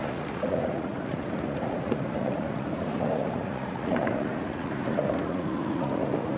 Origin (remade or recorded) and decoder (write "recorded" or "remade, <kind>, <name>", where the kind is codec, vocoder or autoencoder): remade, vocoder, Vocos